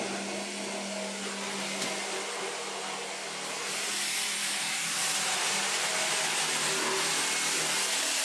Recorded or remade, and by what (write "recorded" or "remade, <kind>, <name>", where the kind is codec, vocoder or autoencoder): recorded